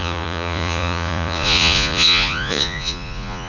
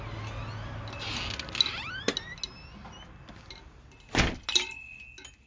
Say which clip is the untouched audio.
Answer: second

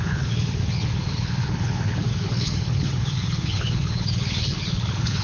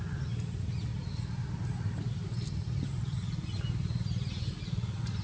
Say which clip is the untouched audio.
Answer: second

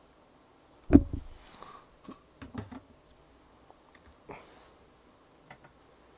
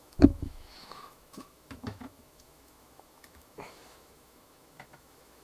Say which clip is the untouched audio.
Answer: first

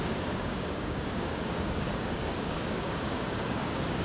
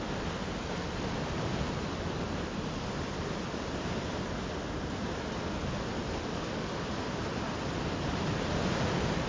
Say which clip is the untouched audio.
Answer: second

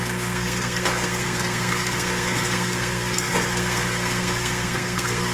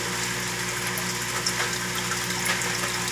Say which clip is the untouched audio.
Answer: second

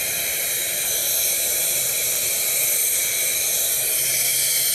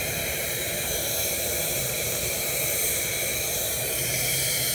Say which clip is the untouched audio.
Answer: first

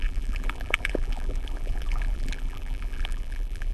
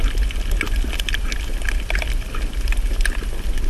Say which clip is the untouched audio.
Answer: second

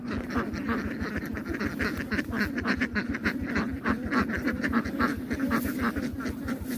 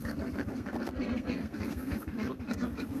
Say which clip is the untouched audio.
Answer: first